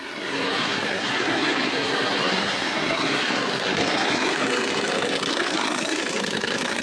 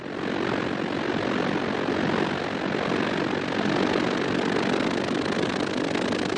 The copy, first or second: first